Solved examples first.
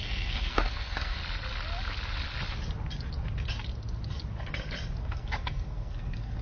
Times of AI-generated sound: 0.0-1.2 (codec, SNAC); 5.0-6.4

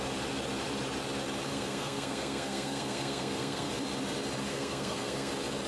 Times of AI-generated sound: 1.5-3.7 (codec, SNAC); 4.5-5.3

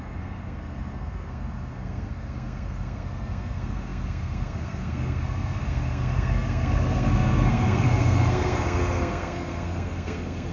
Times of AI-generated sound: 0.0-10.5 (codec, SNAC)

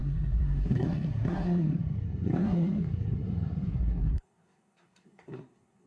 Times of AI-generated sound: 0.0-5.9 (codec, SNAC)

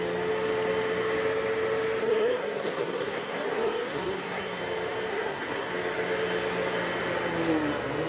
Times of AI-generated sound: 2.0-4.6 (codec, SNAC); 5.1-5.7